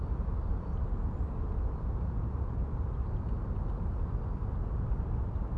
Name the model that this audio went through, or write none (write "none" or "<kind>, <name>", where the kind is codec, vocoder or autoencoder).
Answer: none